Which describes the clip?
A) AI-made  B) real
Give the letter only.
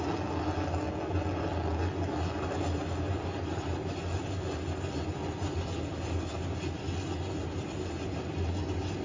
B